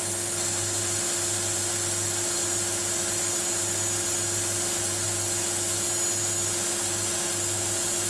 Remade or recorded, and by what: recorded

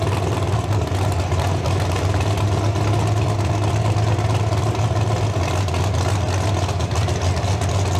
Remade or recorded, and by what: recorded